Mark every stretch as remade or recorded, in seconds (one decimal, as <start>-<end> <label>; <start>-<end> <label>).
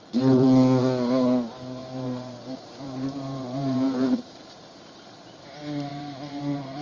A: 0.0-1.8 recorded; 1.8-4.8 remade; 4.8-5.9 recorded; 5.9-6.8 remade